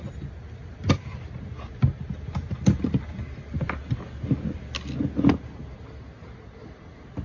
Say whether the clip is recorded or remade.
recorded